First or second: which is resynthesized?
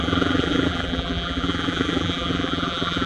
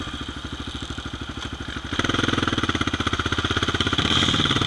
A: first